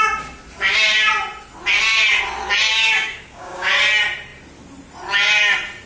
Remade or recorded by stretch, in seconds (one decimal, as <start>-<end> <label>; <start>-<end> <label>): 0.0-2.7 recorded; 2.7-3.7 remade; 3.7-5.9 recorded